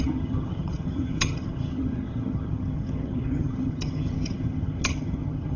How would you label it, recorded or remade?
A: remade